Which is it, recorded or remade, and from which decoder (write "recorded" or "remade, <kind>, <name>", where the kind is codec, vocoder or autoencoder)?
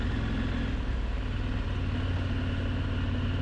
recorded